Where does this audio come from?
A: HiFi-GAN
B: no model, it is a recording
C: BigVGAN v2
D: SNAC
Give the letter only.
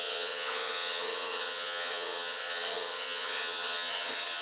A